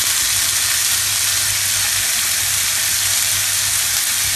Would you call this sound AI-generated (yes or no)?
no